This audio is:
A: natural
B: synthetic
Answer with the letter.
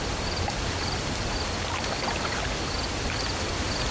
A